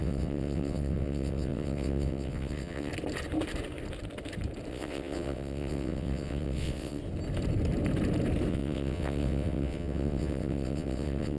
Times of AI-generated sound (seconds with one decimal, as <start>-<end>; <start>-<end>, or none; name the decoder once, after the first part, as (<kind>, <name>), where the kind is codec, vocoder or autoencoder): 0.0-2.9 (vocoder, WaveNeXt); 4.7-7.0; 8.5-11.4